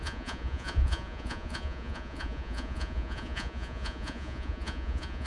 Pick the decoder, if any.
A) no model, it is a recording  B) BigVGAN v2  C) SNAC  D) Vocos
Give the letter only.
D